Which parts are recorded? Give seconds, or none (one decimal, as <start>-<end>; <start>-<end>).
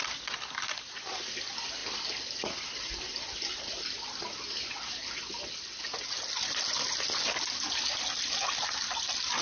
0.0-9.4